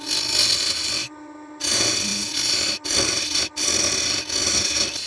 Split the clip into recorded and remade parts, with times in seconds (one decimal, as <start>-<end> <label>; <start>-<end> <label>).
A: 0.0-5.1 recorded